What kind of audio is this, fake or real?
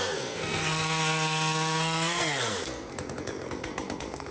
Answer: fake